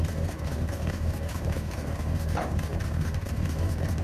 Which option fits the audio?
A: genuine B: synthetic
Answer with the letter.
B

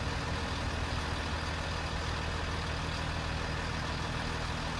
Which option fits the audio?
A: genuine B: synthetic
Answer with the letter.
A